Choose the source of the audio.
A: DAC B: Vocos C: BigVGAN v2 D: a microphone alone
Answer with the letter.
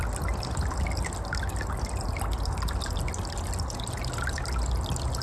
D